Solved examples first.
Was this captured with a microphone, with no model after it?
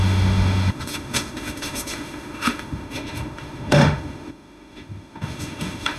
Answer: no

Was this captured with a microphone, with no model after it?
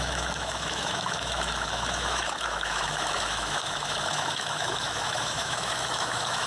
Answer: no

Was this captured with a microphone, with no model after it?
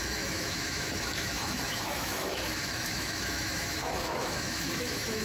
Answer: no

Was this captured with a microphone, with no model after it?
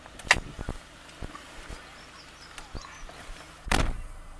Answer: yes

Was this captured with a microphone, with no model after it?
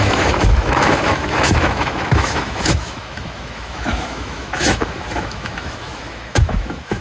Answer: no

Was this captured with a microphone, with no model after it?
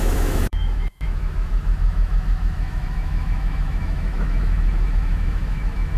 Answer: no